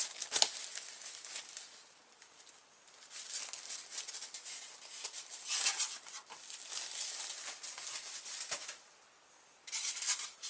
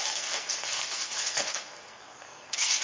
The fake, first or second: second